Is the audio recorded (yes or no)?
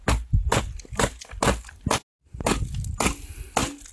yes